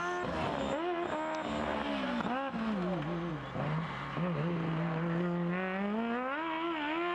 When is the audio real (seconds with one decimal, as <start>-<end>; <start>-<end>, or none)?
0.0-7.1